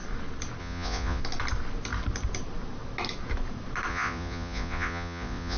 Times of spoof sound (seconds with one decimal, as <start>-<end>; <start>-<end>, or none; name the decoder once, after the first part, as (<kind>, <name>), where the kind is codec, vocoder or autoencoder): 0.6-1.2 (vocoder, Vocos); 3.9-5.6